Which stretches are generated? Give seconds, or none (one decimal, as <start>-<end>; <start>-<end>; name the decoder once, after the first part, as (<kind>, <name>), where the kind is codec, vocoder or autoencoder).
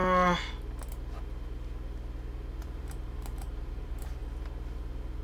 2.6-4.2 (vocoder, BigVGAN v2)